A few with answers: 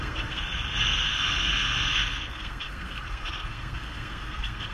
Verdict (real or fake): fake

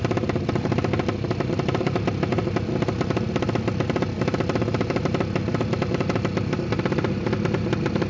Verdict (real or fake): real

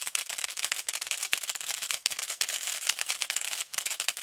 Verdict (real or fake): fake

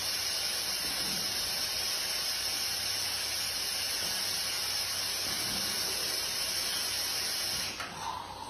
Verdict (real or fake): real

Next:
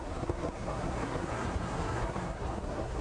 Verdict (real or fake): fake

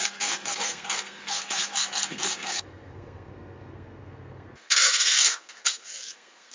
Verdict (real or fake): fake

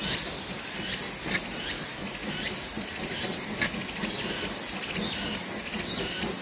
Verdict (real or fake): real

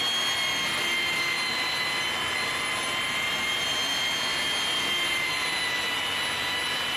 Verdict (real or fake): real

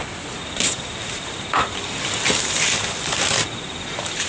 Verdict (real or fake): real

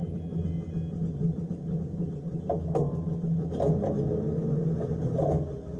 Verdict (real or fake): real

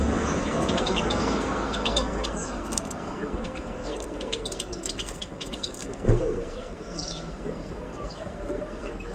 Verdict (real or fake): fake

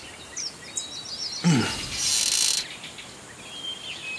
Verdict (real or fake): real